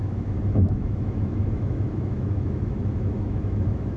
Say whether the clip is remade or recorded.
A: remade